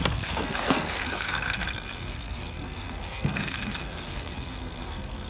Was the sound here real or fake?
fake